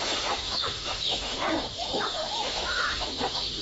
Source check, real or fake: fake